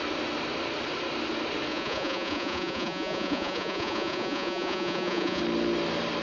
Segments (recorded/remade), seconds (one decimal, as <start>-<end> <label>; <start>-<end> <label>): 0.0-1.7 recorded; 1.7-5.4 remade; 5.4-6.2 recorded